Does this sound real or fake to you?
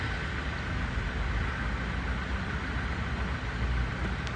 real